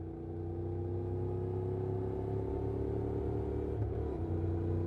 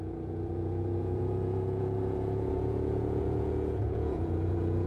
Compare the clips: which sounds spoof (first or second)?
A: second